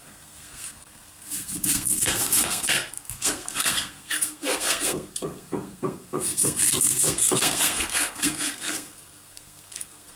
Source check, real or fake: fake